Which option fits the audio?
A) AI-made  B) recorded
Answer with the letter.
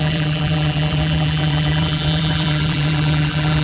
A